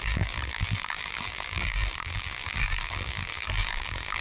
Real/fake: fake